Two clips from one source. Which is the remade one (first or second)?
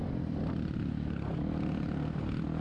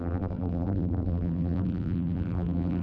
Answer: second